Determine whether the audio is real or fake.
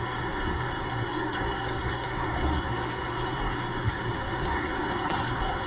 fake